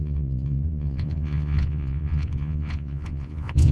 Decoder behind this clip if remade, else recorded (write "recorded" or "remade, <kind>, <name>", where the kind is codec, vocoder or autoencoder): remade, vocoder, Vocos